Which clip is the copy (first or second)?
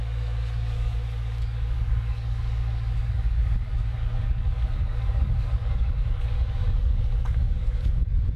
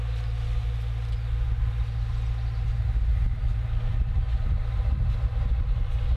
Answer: first